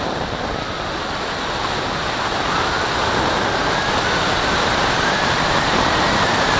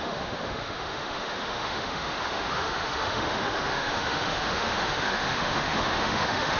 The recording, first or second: first